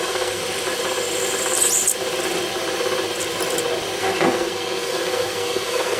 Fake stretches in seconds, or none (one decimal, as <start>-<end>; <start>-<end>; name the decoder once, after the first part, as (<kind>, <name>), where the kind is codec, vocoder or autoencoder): 0.0-0.4 (codec, SNAC); 4.0-6.0